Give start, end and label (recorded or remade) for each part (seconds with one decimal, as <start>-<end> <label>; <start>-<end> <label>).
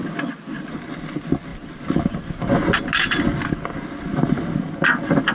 0.0-5.3 recorded